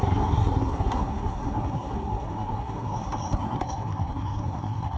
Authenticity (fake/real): fake